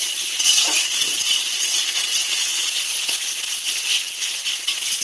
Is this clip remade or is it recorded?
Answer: remade